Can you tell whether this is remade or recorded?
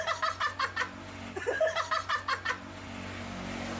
recorded